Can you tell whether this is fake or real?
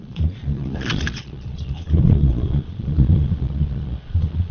fake